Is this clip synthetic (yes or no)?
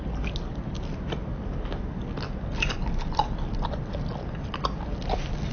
no